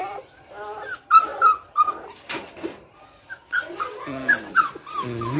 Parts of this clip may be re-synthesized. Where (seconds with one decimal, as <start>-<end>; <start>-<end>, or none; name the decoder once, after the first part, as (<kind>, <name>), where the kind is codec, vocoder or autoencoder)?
0.0-0.5 (vocoder, BigVGAN v2)